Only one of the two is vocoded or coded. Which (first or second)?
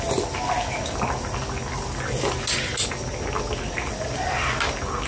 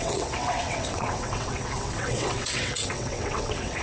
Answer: second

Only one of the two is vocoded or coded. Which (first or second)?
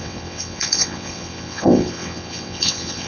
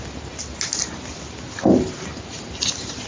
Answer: first